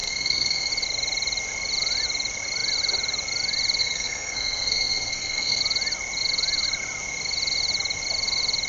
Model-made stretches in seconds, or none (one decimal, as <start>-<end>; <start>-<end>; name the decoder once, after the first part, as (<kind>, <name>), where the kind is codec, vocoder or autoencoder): 0.0-0.7 (codec, SNAC); 3.8-5.6